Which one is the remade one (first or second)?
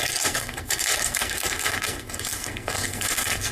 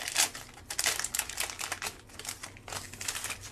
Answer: first